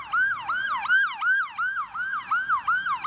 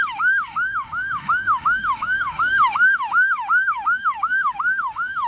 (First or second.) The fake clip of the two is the second